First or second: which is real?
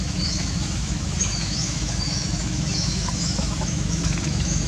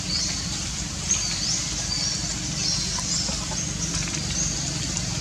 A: second